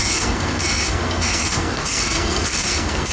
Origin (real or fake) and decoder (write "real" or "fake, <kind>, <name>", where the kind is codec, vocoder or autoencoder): fake, codec, SNAC